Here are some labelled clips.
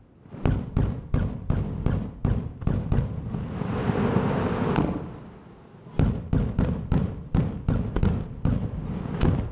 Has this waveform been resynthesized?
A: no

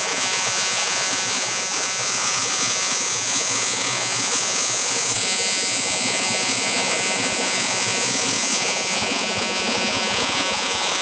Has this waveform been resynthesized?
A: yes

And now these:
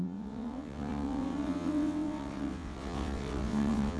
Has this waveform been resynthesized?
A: yes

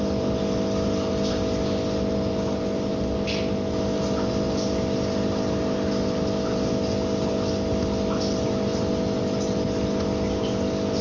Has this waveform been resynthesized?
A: no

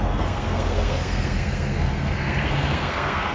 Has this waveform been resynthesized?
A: yes